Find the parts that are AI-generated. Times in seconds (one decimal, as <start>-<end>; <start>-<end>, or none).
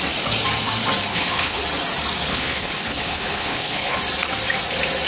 1.1-1.6; 2.3-4.0